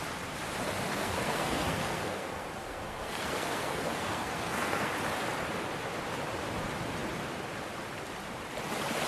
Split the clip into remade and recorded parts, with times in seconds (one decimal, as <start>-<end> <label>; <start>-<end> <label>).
0.0-0.9 recorded; 0.9-4.9 remade; 4.9-9.1 recorded